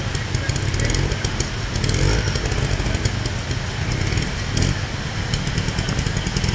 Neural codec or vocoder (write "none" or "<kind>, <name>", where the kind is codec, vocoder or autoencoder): none